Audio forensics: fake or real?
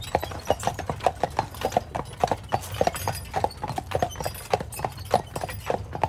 real